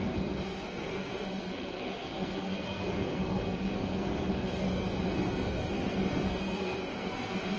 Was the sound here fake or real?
fake